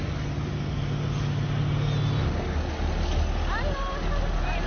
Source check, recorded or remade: recorded